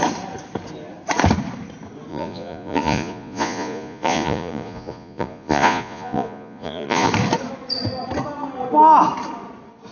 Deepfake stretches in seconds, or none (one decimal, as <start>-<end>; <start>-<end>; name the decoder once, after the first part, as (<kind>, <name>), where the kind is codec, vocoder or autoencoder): 2.1-7.1 (vocoder, Vocos)